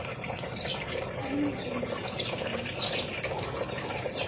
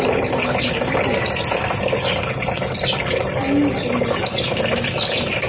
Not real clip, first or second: first